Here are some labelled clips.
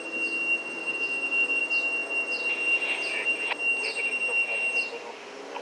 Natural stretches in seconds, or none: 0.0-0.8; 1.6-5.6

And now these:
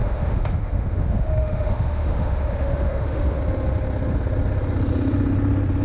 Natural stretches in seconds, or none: 3.4-5.8

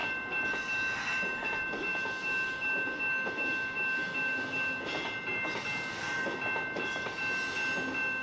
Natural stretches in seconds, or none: 0.0-1.9; 4.8-8.2

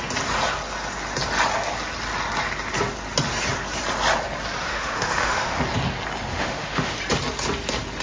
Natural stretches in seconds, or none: 0.0-4.6; 5.6-6.3; 7.0-8.0